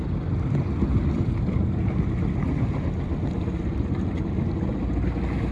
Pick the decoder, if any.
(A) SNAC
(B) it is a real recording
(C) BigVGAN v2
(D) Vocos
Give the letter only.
B